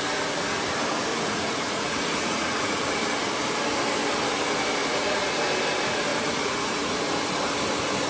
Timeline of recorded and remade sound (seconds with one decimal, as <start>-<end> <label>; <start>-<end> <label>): 0.0-1.1 recorded; 1.1-2.8 remade; 2.8-4.8 recorded; 4.8-5.3 remade; 5.3-6.1 recorded; 6.1-7.0 remade; 7.0-8.1 recorded